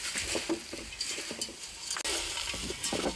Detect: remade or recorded recorded